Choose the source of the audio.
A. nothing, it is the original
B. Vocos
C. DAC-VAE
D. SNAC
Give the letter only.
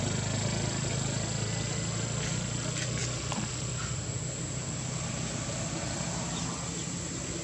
A